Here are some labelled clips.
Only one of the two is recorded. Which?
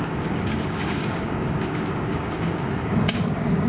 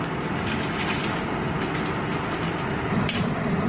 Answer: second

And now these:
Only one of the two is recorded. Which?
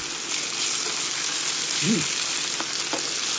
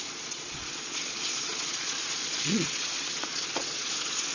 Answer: first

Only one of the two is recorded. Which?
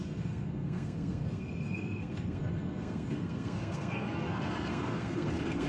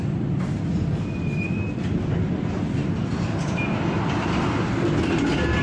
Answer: second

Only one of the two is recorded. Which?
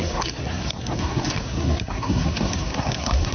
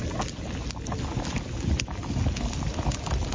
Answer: second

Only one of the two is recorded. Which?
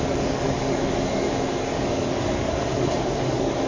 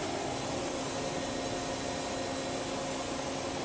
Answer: second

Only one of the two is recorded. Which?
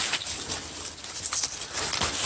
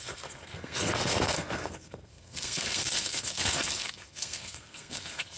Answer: first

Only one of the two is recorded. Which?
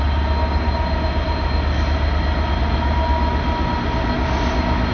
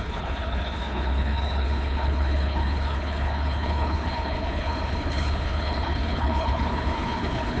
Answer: first